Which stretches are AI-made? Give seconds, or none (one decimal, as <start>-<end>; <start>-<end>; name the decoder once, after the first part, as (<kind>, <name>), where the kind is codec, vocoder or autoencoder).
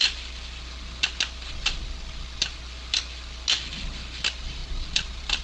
none